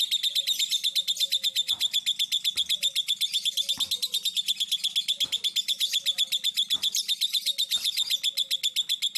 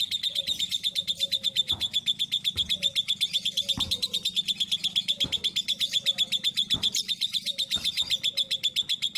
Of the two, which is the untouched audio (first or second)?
first